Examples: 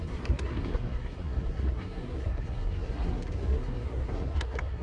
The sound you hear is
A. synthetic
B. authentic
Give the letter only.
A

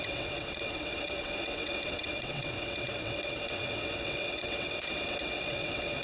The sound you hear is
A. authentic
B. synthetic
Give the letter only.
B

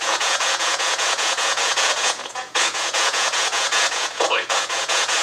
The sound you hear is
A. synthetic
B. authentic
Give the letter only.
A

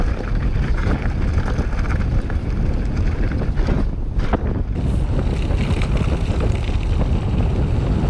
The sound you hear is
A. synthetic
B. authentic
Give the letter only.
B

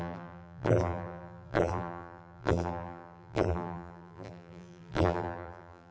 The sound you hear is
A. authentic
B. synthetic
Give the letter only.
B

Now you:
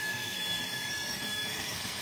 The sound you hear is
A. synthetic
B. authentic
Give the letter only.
A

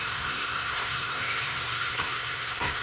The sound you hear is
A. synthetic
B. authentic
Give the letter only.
A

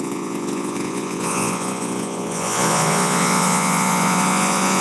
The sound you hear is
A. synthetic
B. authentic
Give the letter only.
A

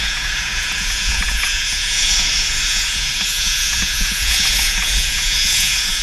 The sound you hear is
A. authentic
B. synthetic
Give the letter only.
B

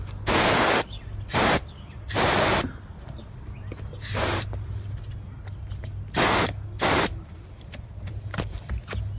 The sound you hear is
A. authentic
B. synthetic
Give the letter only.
A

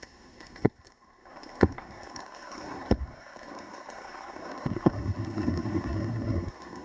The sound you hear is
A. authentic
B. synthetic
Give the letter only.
B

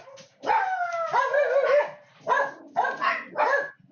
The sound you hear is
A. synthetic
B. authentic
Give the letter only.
B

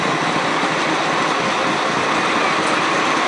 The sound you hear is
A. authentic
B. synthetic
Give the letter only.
A